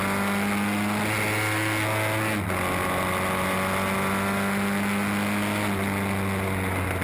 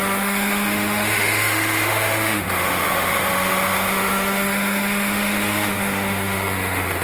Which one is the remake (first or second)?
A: second